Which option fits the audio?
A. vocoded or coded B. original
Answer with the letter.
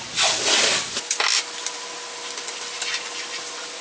B